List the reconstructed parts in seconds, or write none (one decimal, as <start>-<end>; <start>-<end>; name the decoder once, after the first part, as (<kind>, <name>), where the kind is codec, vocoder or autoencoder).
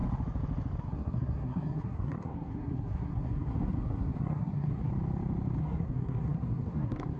0.8-4.9 (codec, SNAC); 5.6-7.2